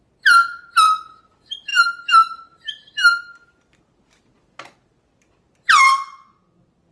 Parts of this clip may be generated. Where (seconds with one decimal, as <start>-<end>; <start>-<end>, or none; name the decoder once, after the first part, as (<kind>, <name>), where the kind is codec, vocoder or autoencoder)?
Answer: none